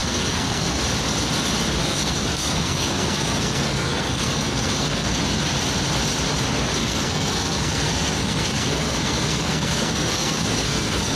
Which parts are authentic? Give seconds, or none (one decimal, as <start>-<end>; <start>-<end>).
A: 0.8-1.8; 5.2-6.8